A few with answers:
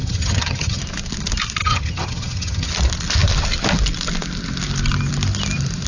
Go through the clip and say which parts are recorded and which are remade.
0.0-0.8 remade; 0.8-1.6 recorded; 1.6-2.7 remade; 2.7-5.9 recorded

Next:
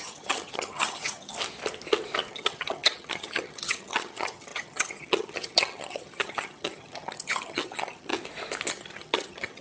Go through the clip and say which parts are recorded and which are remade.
0.0-1.3 remade; 1.3-2.3 recorded; 2.3-8.1 remade; 8.1-8.7 recorded; 8.7-9.6 remade

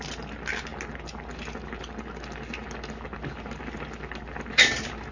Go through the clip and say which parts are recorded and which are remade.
0.0-5.1 recorded

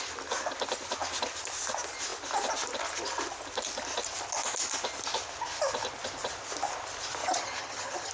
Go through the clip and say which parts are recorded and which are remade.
0.0-7.2 recorded; 7.2-8.1 remade

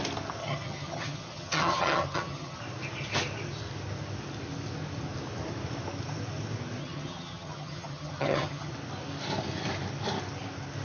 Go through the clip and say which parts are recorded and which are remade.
0.0-0.4 recorded; 0.4-2.6 remade; 2.6-6.8 recorded; 6.8-8.7 remade; 8.7-10.8 recorded

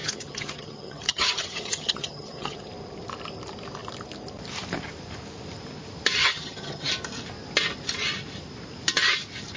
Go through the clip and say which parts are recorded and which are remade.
0.0-2.7 remade; 2.7-6.2 recorded; 6.2-6.9 remade; 6.9-9.6 recorded

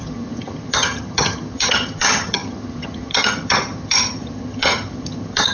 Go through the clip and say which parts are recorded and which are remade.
0.0-5.5 remade